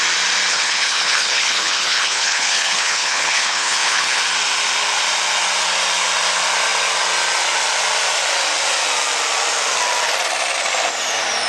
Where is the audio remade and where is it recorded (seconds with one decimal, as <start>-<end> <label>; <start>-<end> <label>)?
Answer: 0.0-0.5 recorded; 0.5-4.2 remade; 4.2-11.5 recorded